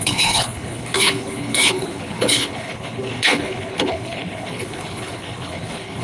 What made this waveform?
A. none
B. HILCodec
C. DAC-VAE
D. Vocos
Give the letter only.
B